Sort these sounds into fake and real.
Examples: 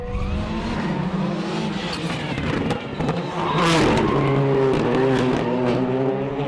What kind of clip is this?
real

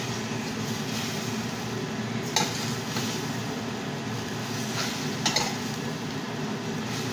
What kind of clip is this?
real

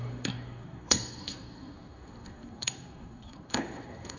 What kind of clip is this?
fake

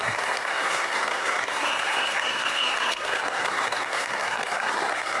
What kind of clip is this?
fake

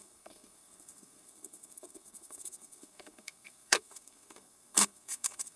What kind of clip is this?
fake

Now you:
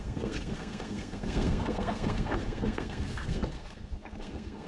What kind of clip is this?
fake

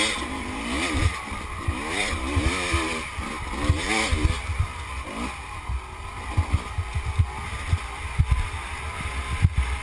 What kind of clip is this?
real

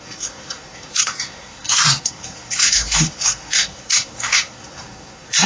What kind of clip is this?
fake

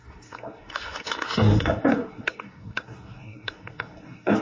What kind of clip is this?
fake